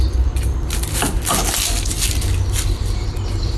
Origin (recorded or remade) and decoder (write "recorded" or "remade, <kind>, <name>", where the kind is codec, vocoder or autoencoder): recorded